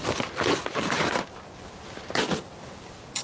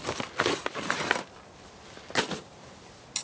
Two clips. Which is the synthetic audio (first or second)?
first